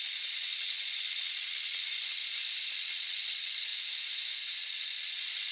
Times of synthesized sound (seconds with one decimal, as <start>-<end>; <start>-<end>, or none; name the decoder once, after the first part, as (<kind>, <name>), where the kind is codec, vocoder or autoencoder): 0.0-2.2 (vocoder, Vocos); 2.7-3.7; 4.6-5.5

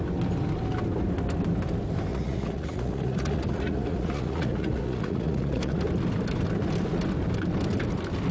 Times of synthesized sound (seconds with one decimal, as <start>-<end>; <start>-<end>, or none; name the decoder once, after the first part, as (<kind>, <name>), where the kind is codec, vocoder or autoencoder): 2.1-5.8 (vocoder, Vocos)

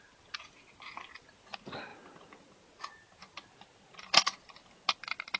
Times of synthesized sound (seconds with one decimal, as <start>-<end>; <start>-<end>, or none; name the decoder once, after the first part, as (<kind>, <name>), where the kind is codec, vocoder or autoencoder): none

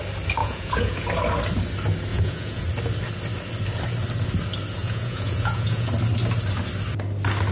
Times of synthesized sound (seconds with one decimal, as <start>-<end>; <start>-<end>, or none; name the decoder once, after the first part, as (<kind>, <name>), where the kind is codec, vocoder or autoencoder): 0.4-1.1 (vocoder, Vocos); 2.1-2.6; 4.8-5.9